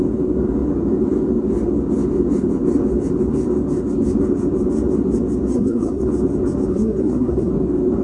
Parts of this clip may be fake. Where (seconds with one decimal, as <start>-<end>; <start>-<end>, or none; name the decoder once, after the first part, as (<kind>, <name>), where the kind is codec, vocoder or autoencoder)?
5.5-6.1 (codec, SNAC); 6.7-7.5